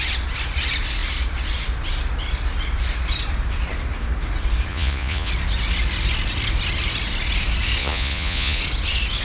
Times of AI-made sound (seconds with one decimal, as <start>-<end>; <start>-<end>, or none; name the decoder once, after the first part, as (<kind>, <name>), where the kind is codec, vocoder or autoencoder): 4.7-5.3 (vocoder, Vocos); 7.8-8.6